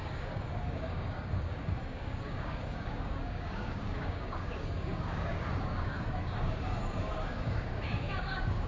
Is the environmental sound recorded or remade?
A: remade